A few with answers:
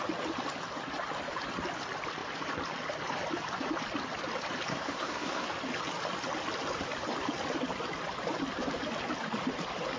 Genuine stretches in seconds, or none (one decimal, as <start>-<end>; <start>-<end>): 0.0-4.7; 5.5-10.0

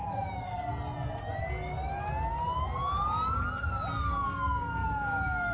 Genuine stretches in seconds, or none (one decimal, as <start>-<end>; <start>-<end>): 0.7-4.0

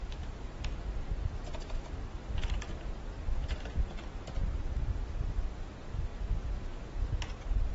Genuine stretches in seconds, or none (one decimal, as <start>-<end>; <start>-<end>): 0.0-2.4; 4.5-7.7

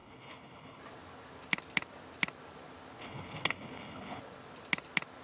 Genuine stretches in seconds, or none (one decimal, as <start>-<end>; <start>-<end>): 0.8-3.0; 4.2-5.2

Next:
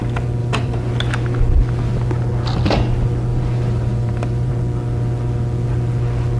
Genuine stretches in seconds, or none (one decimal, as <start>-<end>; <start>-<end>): 0.0-0.4; 0.9-3.3; 4.5-6.4

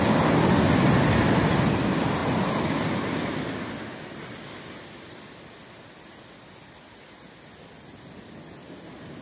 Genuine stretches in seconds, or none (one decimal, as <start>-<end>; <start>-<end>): 0.0-9.2

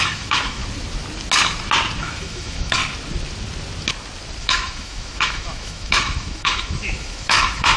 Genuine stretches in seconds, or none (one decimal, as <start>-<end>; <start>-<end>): 0.6-2.0; 2.8-4.4